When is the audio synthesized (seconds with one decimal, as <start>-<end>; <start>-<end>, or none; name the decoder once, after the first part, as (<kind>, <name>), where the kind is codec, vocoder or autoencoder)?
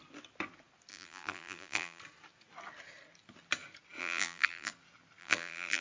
0.9-2.0 (vocoder, BigVGAN v2); 4.0-4.7; 5.2-5.8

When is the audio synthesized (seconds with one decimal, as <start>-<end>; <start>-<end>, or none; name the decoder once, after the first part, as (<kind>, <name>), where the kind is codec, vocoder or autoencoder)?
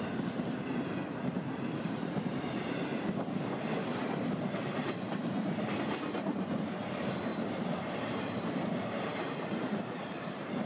0.0-2.9 (vocoder, BigVGAN v2); 4.3-7.3; 8.2-10.7